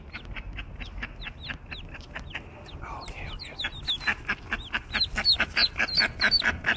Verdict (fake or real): real